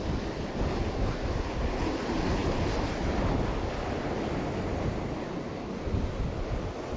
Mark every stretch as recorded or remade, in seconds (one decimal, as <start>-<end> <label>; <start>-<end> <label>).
0.0-7.0 recorded